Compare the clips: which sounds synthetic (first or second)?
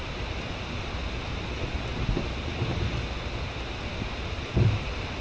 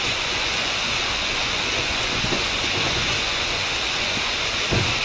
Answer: second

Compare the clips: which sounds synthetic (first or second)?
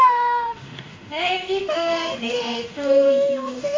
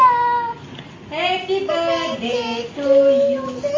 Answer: first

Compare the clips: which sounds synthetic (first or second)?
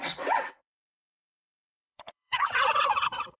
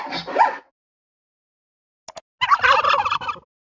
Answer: first